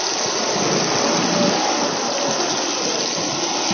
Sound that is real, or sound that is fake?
real